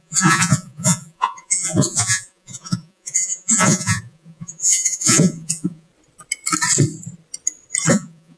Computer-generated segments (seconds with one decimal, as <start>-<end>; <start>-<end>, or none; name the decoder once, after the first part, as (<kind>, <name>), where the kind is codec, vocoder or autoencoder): 0.0-5.9 (vocoder, Vocos); 7.9-8.4